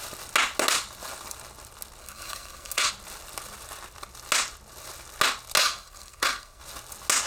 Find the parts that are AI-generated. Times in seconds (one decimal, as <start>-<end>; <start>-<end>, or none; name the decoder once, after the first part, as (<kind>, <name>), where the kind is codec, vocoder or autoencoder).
2.0-2.9 (codec, SNAC); 5.6-6.6